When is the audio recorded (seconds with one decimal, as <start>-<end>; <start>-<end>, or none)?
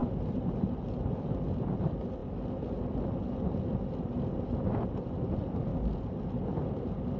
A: 0.0-7.2